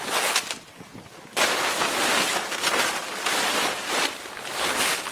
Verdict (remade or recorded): recorded